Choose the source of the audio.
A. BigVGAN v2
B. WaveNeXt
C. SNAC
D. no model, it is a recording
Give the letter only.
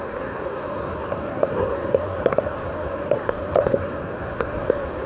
C